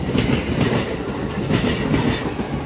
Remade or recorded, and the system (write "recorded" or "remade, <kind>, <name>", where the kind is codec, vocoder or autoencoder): recorded